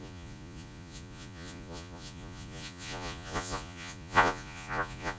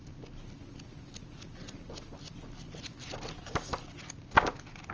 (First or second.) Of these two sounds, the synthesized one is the first